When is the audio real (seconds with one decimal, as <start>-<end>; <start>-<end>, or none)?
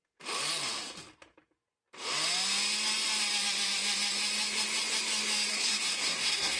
0.0-5.5